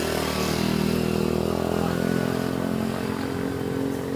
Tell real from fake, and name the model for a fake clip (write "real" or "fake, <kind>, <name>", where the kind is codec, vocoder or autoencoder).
real